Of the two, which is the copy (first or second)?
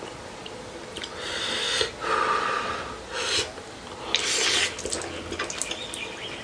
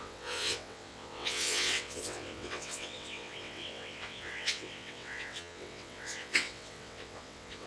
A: second